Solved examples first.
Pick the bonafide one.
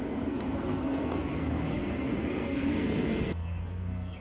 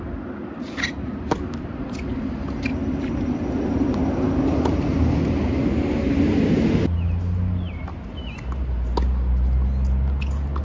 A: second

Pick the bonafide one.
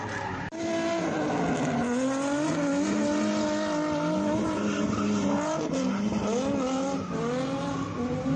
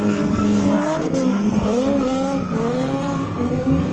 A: first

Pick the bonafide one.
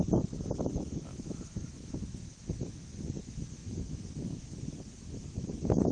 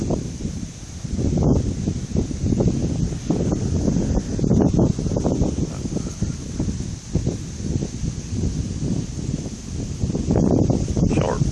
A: second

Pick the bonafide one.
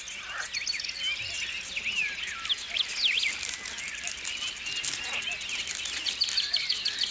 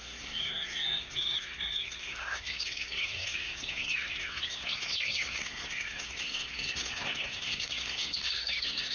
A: first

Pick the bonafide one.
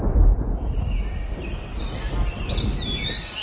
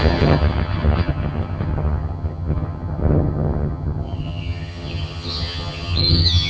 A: first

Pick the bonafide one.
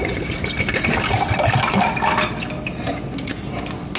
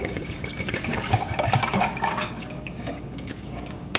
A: first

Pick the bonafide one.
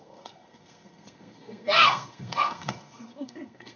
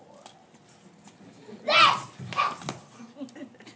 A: second